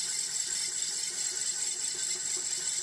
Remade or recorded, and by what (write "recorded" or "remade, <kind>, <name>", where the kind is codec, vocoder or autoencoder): recorded